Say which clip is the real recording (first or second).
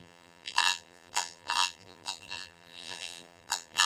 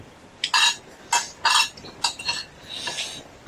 second